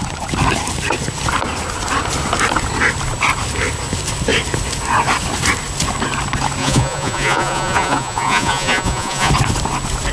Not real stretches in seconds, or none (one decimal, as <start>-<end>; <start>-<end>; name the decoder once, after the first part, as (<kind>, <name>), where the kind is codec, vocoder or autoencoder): 6.6-9.3 (vocoder, Vocos)